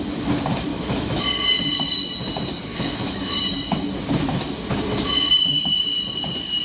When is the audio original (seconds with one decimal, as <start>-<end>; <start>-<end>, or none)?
0.0-0.7; 1.2-2.7; 3.4-6.6